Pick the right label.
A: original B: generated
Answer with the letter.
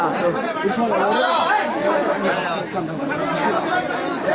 A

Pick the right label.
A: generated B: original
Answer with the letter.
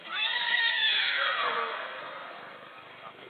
A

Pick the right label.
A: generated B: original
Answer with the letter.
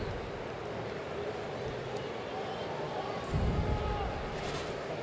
B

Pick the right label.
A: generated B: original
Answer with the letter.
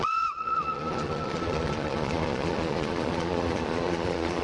A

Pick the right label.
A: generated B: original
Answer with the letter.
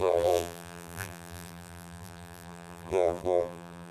A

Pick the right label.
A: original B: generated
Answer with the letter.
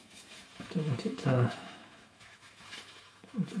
B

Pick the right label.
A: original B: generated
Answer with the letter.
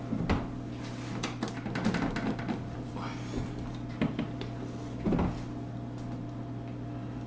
A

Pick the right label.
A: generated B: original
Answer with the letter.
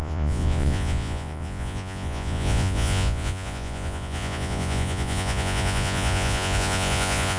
A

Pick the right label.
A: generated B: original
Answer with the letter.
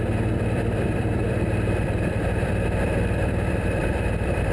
A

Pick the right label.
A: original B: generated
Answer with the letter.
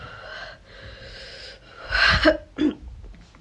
A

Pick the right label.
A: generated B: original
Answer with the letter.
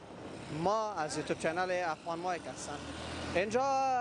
B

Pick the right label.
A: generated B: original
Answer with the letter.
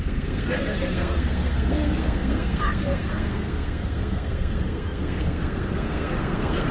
A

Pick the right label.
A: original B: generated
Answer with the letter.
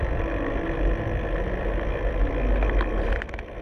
A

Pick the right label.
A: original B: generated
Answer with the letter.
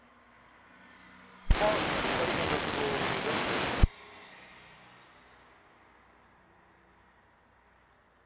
A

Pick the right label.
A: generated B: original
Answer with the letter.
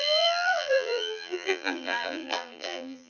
A